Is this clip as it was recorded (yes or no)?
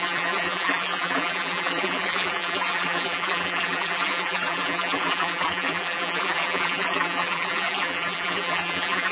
no